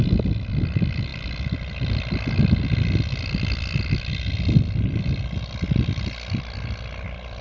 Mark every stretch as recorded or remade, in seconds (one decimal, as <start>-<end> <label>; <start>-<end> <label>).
0.0-7.4 recorded